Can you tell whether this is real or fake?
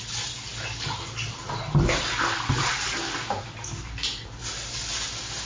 real